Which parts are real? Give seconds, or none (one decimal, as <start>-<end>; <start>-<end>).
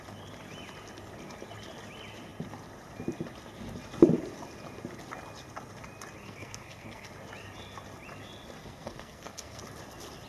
0.0-6.2; 7.1-8.6; 9.6-10.3